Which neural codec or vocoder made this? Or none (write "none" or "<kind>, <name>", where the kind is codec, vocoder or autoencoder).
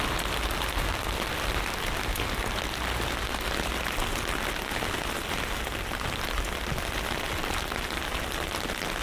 none